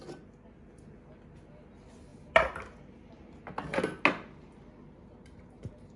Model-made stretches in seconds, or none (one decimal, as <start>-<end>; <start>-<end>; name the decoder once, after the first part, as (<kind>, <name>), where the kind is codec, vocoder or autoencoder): none